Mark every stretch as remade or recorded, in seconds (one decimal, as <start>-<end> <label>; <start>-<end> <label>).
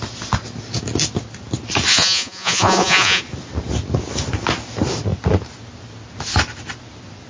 0.0-1.9 recorded; 1.9-3.2 remade; 3.2-7.3 recorded